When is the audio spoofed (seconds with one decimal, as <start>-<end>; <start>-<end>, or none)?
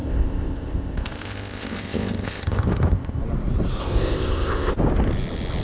0.0-3.2; 3.8-4.7